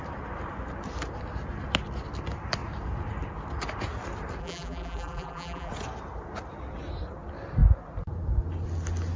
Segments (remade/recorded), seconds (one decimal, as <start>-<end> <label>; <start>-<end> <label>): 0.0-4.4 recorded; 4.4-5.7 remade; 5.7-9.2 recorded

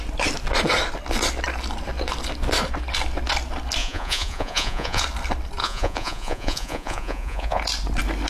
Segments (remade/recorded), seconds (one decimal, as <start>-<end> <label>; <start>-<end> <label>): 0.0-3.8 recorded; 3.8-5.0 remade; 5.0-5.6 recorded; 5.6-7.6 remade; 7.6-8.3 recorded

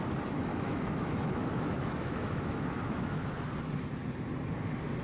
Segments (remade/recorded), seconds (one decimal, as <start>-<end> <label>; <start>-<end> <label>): 0.0-0.5 recorded; 0.5-3.5 remade; 3.5-5.0 recorded

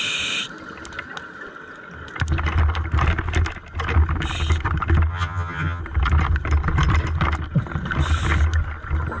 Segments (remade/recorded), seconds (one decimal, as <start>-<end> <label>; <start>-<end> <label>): 0.0-5.1 recorded; 5.1-5.8 remade; 5.8-9.2 recorded

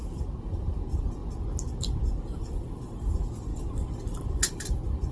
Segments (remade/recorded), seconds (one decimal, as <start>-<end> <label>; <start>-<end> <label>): 0.0-1.2 remade; 1.2-3.1 recorded; 3.1-3.5 remade; 3.5-4.3 recorded; 4.3-5.1 remade